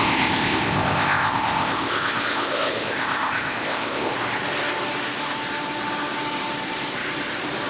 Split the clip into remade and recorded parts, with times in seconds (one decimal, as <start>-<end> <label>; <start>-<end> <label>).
0.0-4.1 remade; 4.1-7.7 recorded